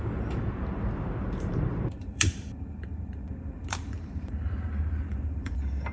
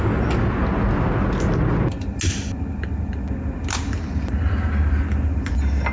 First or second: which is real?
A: second